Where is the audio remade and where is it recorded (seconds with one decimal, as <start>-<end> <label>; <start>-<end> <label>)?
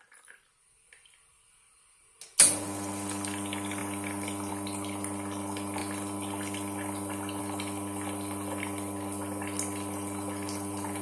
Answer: 0.0-11.0 recorded